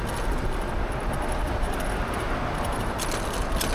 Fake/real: real